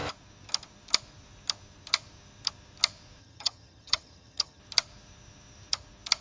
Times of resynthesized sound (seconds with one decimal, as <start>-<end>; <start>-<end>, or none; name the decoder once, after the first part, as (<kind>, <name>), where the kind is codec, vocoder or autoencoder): 3.2-4.6 (vocoder, HiFi-GAN)